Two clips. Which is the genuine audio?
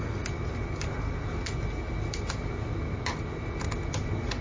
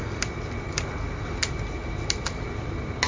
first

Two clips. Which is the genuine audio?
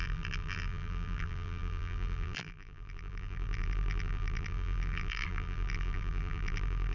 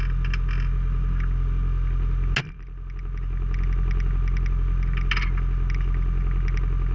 second